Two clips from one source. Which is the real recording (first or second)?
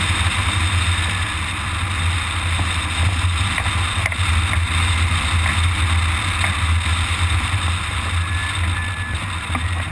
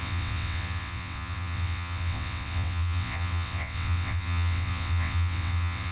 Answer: first